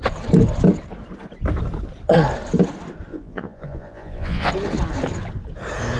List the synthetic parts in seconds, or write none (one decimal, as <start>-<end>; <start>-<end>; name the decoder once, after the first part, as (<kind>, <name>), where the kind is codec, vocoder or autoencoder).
3.1-4.5 (vocoder, Vocos)